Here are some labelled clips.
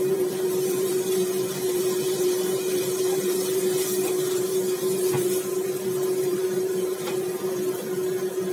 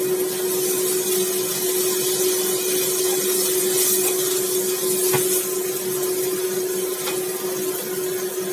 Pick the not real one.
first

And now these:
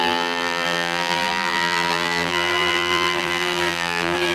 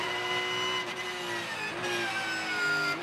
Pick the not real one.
first